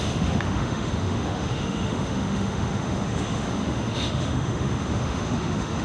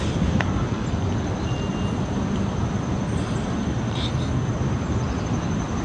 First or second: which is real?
second